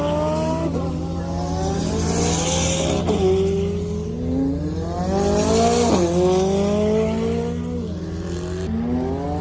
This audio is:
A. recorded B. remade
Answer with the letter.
A